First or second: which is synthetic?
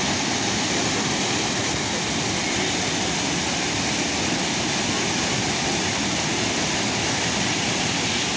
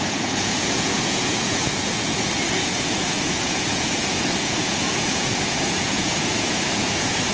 second